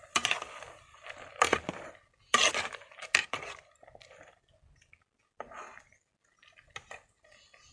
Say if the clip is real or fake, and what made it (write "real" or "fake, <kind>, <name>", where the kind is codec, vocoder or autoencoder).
real